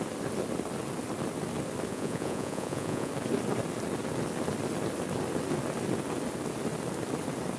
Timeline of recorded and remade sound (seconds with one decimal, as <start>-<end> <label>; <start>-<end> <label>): 0.0-1.9 recorded; 1.9-3.1 remade; 3.1-7.6 recorded